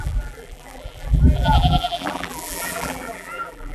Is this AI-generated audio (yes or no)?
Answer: yes